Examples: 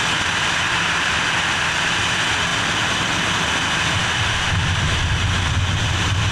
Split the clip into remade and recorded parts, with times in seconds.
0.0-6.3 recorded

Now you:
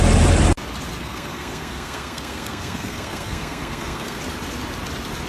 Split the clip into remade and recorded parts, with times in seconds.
0.0-1.0 recorded; 1.0-4.2 remade; 4.2-5.3 recorded

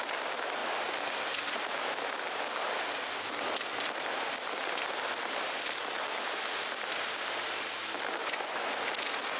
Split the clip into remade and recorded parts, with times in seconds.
0.0-8.2 recorded; 8.2-8.7 remade; 8.7-9.4 recorded

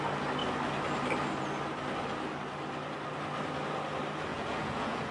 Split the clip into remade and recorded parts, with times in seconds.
0.0-4.3 recorded; 4.3-5.1 remade

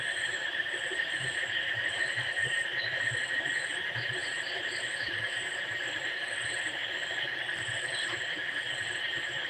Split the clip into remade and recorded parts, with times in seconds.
0.0-2.7 remade; 2.7-3.6 recorded; 3.6-6.8 remade; 6.8-9.0 recorded; 9.0-9.5 remade

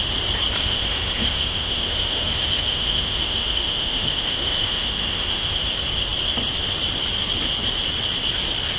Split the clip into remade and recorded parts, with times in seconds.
0.0-0.6 recorded; 0.6-5.6 remade; 5.6-8.8 recorded

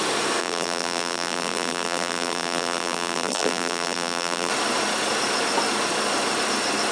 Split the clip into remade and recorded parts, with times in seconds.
0.0-0.4 recorded; 0.4-4.5 remade; 4.5-6.9 recorded

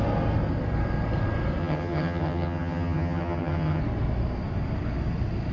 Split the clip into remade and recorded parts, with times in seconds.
0.0-1.6 recorded; 1.6-3.8 remade; 3.8-5.5 recorded